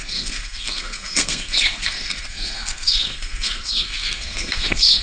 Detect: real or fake fake